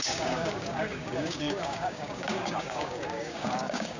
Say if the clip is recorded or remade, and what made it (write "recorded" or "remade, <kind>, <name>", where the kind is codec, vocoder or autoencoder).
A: remade, codec, DAC